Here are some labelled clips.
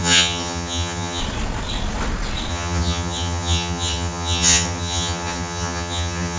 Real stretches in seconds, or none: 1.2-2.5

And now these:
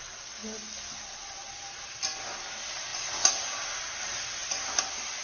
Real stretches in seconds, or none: 0.0-5.2

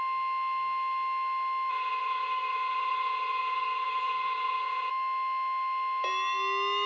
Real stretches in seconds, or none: 0.0-1.7; 4.9-6.9

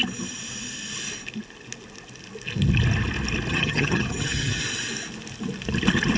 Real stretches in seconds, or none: 0.0-3.5; 4.6-6.2

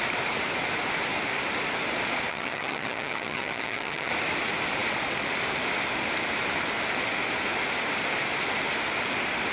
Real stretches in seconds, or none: 0.0-2.3; 4.1-9.5

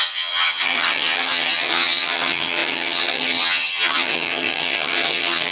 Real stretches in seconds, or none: none

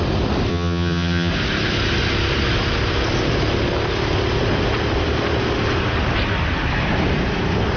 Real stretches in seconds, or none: 0.0-0.5; 1.3-7.8

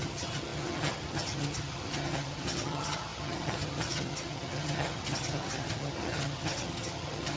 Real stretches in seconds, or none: none